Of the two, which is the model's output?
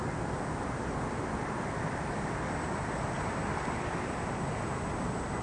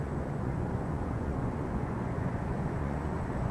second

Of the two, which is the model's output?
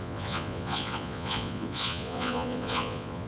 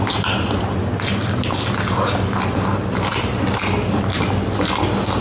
first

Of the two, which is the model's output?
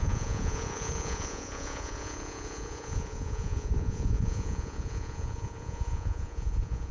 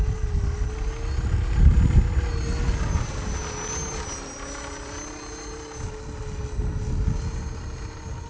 first